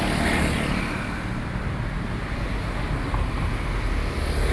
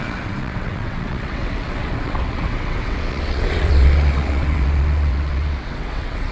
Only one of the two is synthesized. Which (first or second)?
second